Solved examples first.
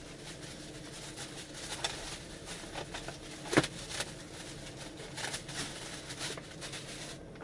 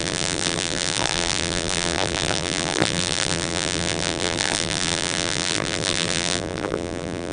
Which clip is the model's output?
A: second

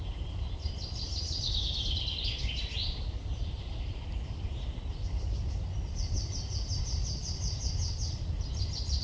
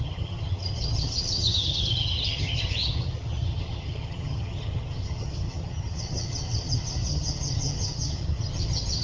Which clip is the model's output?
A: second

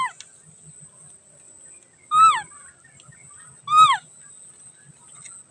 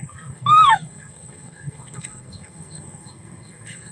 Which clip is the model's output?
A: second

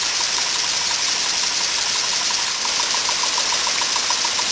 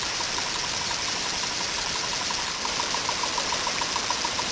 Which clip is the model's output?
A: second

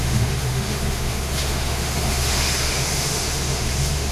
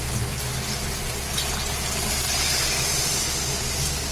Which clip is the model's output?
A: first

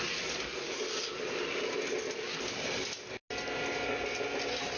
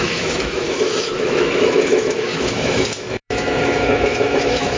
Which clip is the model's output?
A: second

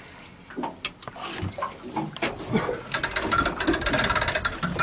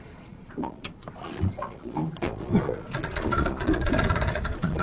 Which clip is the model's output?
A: second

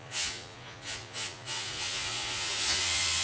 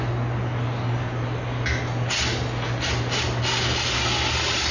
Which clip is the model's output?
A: first